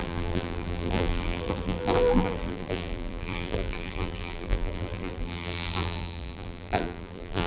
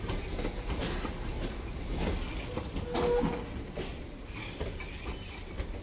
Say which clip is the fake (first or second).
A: first